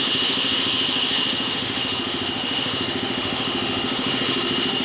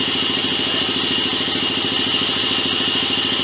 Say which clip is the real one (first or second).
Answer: second